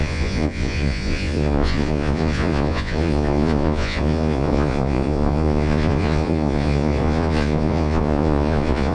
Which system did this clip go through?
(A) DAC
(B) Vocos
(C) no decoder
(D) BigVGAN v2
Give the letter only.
B